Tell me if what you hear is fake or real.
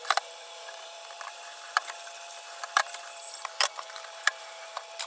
fake